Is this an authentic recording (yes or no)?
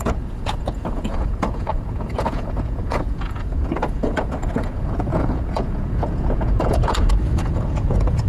no